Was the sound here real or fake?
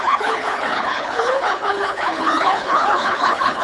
fake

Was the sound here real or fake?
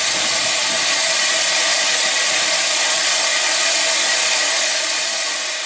real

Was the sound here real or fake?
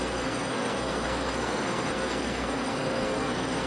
fake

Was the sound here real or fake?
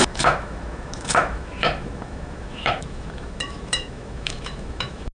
fake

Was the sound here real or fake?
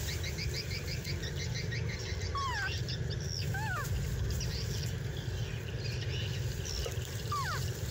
real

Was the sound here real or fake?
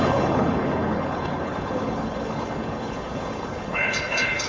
fake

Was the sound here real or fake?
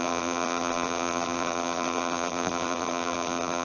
fake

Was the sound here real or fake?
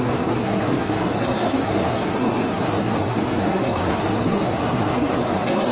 fake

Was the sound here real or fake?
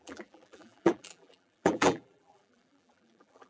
fake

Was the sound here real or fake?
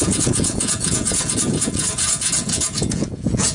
fake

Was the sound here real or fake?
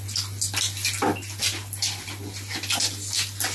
real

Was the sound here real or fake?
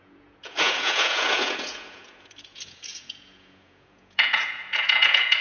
fake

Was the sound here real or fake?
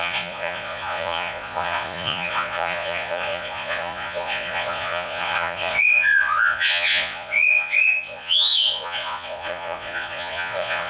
fake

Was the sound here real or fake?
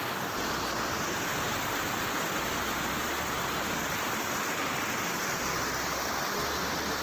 real